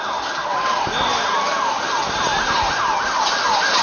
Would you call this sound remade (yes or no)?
no